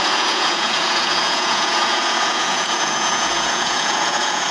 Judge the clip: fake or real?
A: fake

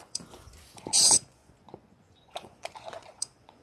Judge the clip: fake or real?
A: fake